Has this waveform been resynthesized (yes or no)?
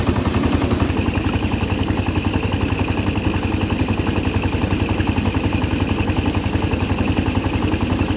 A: no